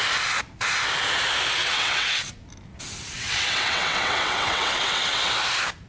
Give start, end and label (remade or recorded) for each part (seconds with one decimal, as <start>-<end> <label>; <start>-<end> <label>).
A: 0.0-1.6 recorded; 1.6-2.3 remade; 2.3-2.7 recorded; 2.7-5.3 remade; 5.3-5.9 recorded